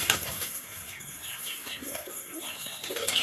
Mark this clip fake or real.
fake